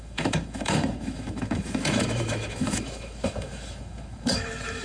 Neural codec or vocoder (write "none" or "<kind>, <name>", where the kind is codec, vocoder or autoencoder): autoencoder, DAC-VAE